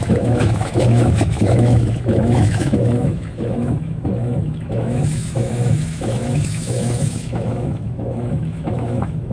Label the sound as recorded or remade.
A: remade